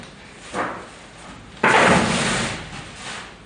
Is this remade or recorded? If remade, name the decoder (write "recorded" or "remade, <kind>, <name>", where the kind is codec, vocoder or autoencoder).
recorded